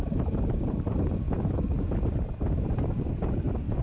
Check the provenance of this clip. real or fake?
real